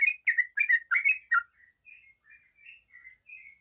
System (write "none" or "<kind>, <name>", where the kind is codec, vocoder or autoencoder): none